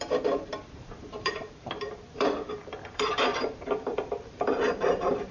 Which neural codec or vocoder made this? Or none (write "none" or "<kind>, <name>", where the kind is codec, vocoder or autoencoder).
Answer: vocoder, BigVGAN v2